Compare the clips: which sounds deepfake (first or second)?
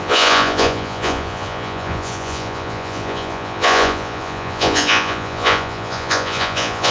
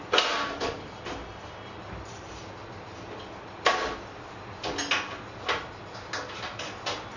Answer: first